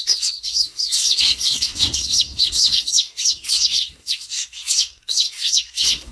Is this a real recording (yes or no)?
no